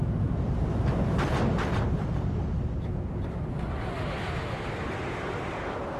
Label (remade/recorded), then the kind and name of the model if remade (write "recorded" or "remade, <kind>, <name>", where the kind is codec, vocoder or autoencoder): recorded